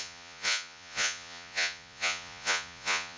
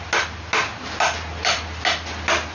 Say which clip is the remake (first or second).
first